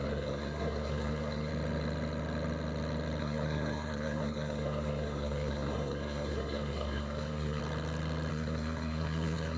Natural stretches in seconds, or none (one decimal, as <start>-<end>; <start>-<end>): 1.5-3.2; 7.6-8.3